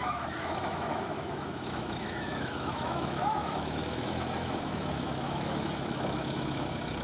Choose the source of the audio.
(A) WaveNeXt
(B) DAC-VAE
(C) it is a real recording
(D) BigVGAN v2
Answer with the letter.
B